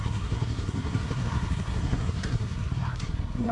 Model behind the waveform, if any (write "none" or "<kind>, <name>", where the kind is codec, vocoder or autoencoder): codec, SNAC